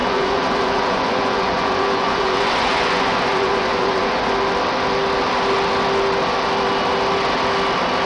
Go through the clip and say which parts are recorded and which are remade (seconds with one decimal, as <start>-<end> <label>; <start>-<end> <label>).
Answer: 0.0-4.3 remade; 4.3-8.1 recorded